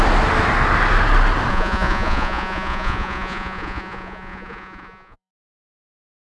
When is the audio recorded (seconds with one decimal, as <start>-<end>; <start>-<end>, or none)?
0.0-1.5; 5.3-6.3

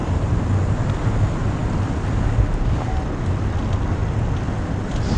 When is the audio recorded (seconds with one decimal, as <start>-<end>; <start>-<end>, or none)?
0.0-5.2

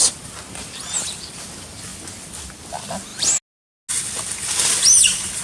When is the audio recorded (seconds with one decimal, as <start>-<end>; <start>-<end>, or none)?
0.0-5.4

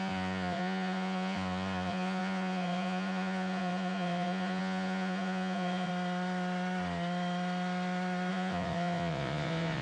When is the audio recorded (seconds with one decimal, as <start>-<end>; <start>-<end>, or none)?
5.9-8.3

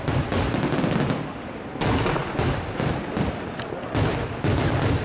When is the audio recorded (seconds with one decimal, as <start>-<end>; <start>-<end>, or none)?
0.0-5.0